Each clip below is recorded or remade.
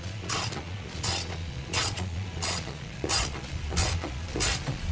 remade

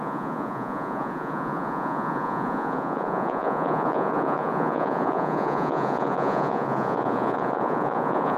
remade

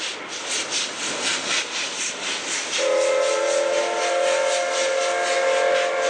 recorded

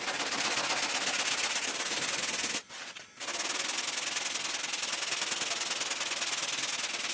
recorded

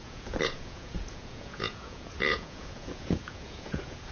remade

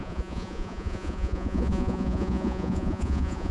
remade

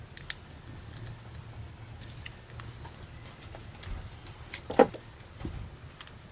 recorded